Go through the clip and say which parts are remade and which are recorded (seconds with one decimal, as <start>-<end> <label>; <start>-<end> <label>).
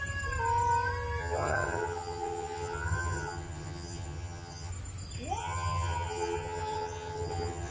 0.0-1.2 recorded; 1.2-4.7 remade; 4.7-5.4 recorded; 5.4-7.7 remade